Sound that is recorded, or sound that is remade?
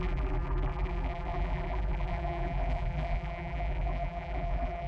remade